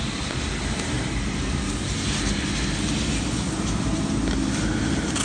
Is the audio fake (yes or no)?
no